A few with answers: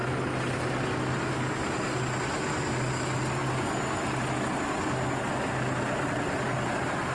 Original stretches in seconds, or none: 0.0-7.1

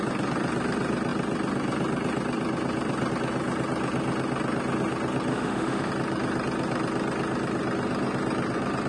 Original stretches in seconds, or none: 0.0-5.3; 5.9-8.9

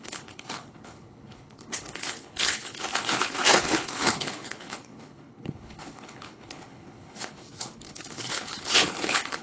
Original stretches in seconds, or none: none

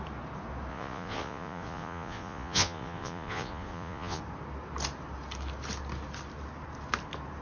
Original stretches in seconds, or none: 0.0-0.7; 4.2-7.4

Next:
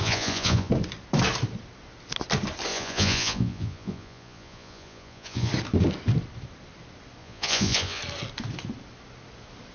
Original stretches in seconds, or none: 0.7-2.7; 5.5-7.2; 8.0-9.7